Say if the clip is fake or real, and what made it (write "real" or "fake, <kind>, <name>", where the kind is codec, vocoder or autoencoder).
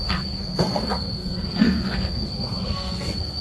fake, codec, SNAC